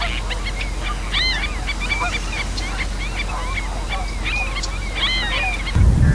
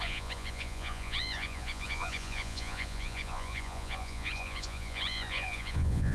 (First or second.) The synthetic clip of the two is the second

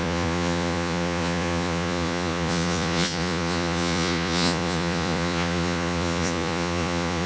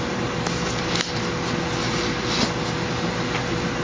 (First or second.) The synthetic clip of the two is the first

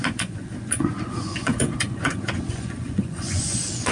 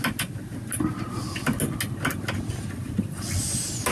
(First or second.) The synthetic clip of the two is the first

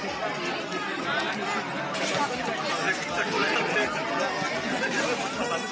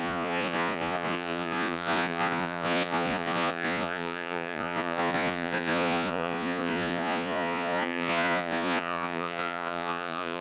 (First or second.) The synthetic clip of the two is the second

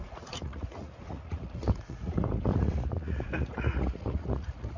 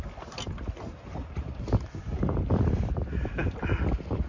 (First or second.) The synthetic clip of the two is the first